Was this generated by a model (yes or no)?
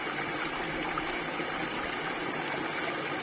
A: no